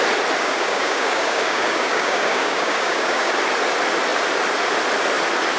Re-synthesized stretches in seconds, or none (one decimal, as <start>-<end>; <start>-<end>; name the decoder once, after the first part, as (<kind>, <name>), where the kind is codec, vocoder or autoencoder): 0.4-3.3 (codec, DAC)